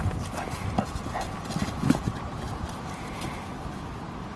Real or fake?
real